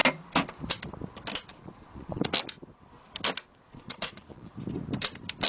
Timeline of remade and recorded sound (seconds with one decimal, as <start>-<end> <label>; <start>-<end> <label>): 0.0-1.5 recorded; 1.5-2.3 remade; 2.3-3.7 recorded; 3.7-4.5 remade; 4.5-5.5 recorded